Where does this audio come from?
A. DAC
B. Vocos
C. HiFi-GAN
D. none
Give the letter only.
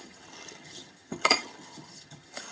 C